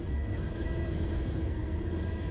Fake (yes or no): yes